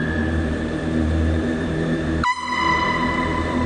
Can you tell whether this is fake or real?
fake